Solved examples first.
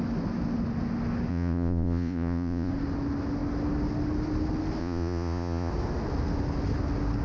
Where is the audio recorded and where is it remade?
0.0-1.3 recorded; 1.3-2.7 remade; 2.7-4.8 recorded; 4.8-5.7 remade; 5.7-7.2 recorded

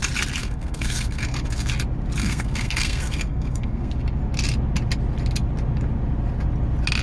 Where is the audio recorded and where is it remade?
0.0-0.4 recorded; 0.4-1.7 remade; 1.7-2.2 recorded; 2.2-3.9 remade; 3.9-7.0 recorded

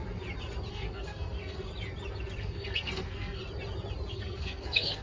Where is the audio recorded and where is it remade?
0.0-0.7 recorded; 0.7-1.7 remade; 1.7-2.4 recorded; 2.4-3.4 remade; 3.4-4.1 recorded; 4.1-5.0 remade

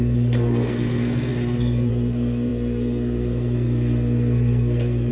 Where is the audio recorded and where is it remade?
0.0-5.1 remade